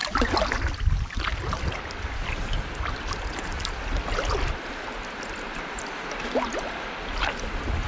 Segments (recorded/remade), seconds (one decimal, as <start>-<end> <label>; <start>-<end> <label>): 0.0-7.9 recorded